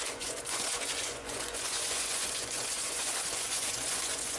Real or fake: fake